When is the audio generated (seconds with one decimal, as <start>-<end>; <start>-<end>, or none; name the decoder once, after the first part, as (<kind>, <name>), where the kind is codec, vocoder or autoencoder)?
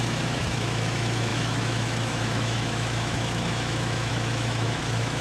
0.0-5.2 (autoencoder, DAC-VAE)